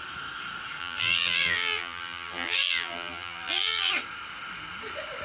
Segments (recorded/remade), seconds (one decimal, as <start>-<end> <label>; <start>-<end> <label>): 0.0-0.8 recorded; 0.8-3.9 remade; 3.9-5.2 recorded